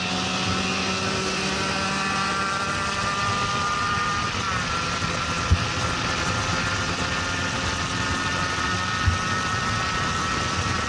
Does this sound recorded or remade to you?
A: recorded